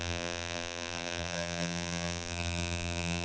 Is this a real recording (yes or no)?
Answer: no